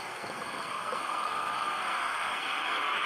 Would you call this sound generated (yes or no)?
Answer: yes